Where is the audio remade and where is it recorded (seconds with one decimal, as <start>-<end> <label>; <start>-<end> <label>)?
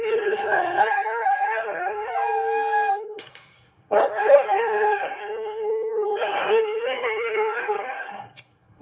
0.0-2.1 remade; 2.1-2.9 recorded; 2.9-8.8 remade